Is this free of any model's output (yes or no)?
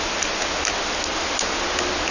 yes